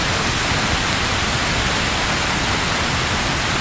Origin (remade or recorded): recorded